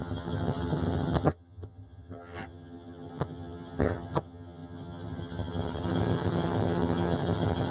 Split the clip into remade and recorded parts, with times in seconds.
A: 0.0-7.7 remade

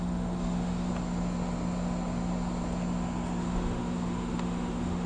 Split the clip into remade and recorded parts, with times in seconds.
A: 0.0-0.9 remade; 0.9-3.4 recorded; 3.4-5.1 remade

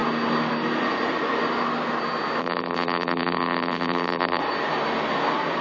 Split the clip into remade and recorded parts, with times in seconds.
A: 0.0-2.4 recorded; 2.4-4.4 remade; 4.4-5.6 recorded

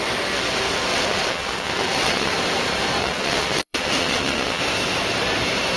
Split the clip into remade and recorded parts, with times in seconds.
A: 0.0-0.9 recorded; 0.9-2.3 remade; 2.3-3.0 recorded; 3.0-4.6 remade; 4.6-5.8 recorded

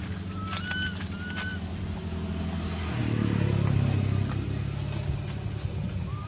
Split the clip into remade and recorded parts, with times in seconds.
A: 0.0-6.3 recorded